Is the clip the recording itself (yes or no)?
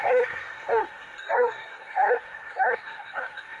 no